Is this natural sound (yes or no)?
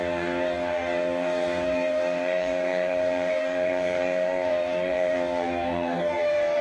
no